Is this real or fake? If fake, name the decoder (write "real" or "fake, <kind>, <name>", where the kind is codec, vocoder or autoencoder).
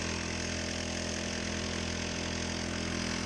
real